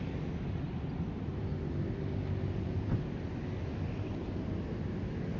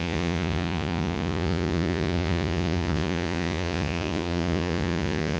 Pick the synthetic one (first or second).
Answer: second